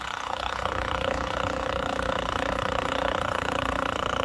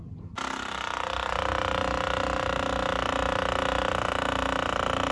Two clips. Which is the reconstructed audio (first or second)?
first